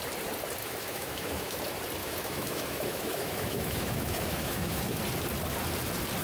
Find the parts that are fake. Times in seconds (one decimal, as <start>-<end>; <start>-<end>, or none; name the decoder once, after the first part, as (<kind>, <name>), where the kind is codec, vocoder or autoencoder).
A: 0.6-1.6 (autoencoder, DAC-VAE); 2.0-5.0